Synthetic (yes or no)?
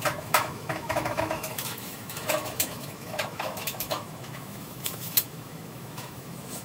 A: yes